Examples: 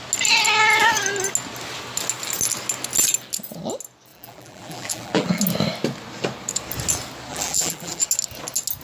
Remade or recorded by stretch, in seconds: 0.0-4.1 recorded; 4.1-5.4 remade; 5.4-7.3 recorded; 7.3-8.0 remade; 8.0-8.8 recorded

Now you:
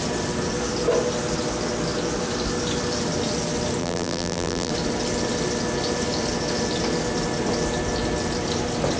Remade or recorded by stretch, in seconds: 0.0-3.8 recorded; 3.8-4.7 remade; 4.7-9.0 recorded